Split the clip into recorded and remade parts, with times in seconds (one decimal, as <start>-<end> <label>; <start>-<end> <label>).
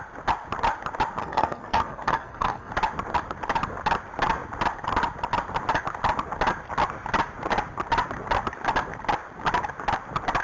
0.0-1.2 recorded; 1.2-2.7 remade; 2.7-10.4 recorded